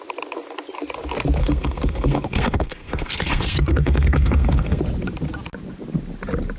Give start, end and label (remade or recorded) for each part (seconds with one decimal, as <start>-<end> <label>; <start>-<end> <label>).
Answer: 0.0-1.4 recorded; 1.4-4.8 remade; 4.8-6.6 recorded